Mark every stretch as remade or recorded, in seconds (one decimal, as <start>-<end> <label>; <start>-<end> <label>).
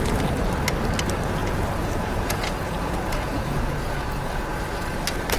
0.0-1.4 recorded; 1.4-4.6 remade; 4.6-5.4 recorded